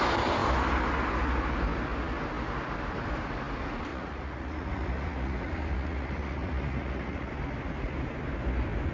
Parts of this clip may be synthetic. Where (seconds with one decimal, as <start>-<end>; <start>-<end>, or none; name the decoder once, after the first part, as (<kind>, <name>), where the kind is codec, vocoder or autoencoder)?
3.9-7.3 (vocoder, Vocos)